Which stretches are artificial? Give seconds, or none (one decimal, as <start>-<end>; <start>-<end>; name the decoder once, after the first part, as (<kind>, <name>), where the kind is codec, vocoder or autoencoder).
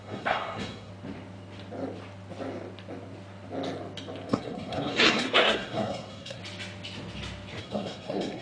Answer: 0.0-0.9 (codec, SNAC); 4.3-6.4; 7.6-8.4